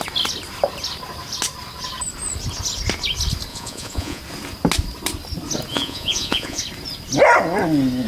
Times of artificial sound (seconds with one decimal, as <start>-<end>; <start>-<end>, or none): 3.5-4.2; 5.7-6.6